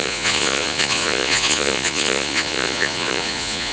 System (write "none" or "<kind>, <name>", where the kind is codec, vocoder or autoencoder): vocoder, Vocos